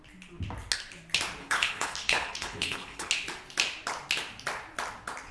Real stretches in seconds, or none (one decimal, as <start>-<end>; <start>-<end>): 0.0-1.4; 3.1-5.3